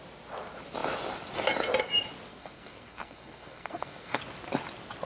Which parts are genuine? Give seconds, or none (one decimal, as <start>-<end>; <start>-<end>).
0.0-2.3; 4.2-5.0